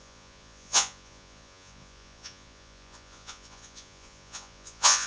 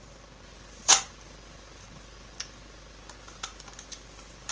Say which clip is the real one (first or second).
second